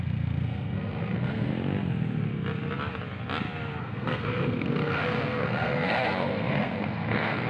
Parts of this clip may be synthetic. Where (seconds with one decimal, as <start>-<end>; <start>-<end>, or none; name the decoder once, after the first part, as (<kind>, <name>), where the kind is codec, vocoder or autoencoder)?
0.0-1.5 (codec, SNAC); 3.8-7.5